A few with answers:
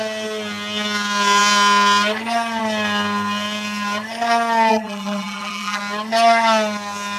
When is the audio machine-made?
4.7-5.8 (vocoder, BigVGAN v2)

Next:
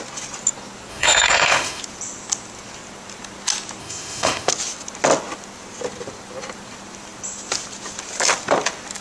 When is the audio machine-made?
0.9-1.8 (autoencoder, DAC-VAE); 3.8-4.5

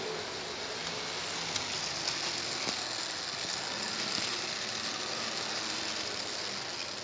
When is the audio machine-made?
none

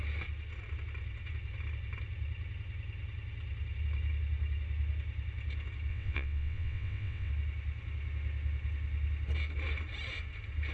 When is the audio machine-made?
5.9-7.3 (vocoder, WaveNeXt)